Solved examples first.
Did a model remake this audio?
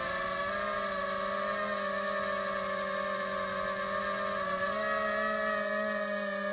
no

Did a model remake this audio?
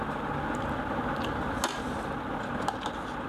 no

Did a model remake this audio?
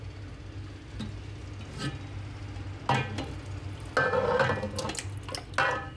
no